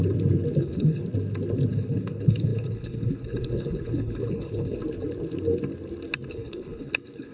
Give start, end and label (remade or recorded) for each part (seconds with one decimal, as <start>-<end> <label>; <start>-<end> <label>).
0.0-0.6 recorded; 0.6-1.0 remade; 1.0-1.7 recorded; 1.7-4.8 remade; 4.8-6.3 recorded; 6.3-7.3 remade